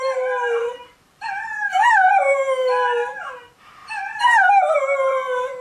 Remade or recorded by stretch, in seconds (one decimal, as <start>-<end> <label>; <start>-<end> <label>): 0.0-2.3 remade; 2.3-3.3 recorded; 3.3-5.6 remade